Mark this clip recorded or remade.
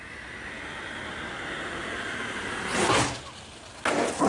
recorded